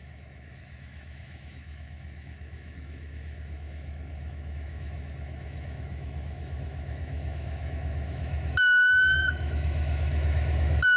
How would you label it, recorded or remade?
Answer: remade